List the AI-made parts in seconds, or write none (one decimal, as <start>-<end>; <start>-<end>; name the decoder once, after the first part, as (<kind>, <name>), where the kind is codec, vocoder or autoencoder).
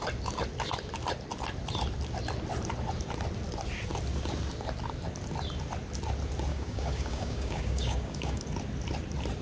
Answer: 6.5-8.4 (codec, DAC)